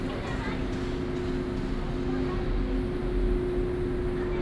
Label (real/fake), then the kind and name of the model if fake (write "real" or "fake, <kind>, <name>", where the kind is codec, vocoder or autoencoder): real